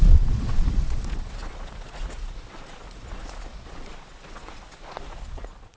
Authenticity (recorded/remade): remade